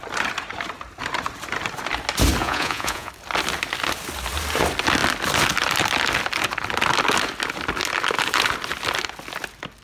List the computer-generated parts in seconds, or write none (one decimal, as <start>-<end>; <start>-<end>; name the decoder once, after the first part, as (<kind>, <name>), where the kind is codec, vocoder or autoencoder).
2.4-3.1 (vocoder, Vocos)

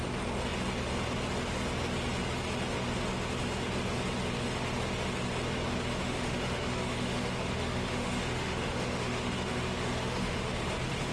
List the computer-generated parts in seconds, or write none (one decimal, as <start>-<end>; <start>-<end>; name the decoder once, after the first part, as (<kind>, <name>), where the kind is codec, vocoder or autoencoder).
6.0-10.6 (autoencoder, DAC-VAE)

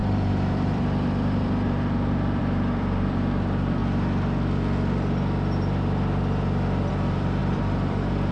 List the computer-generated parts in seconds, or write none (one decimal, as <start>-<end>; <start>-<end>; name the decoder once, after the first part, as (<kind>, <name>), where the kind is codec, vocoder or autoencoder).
0.0-3.8 (vocoder, BigVGAN v2); 6.9-8.3

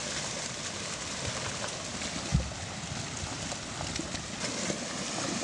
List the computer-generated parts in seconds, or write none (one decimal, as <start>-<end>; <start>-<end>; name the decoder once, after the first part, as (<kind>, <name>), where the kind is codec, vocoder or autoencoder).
none

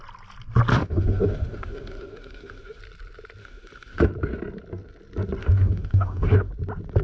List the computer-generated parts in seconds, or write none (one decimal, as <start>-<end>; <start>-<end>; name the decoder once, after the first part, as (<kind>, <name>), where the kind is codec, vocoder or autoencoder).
0.7-2.8 (autoencoder, DAC-VAE); 3.4-4.1; 5.4-6.5

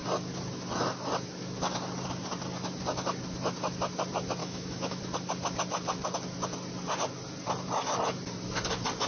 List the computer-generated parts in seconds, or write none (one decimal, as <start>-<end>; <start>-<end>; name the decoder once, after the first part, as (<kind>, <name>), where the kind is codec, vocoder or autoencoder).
4.4-5.0 (autoencoder, DAC-VAE)

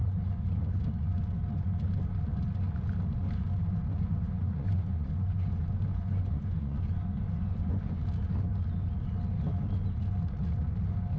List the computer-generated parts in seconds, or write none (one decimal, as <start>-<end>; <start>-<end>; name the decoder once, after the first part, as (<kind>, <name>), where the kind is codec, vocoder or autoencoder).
3.9-8.0 (vocoder, Vocos)

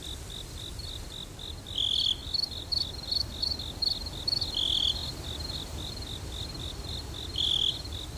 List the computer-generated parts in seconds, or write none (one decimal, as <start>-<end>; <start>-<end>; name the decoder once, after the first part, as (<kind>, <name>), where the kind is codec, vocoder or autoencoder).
2.2-4.2 (vocoder, BigVGAN v2); 5.0-7.5